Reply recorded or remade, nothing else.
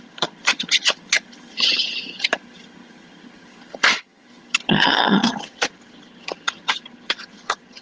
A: remade